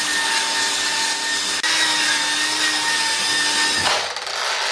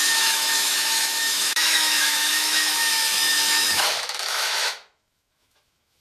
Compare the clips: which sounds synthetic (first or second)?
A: second